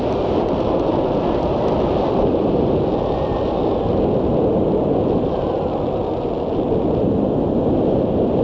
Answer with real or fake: real